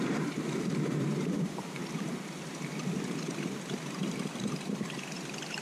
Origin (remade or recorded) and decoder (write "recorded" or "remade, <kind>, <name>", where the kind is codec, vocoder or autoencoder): remade, vocoder, BigVGAN v2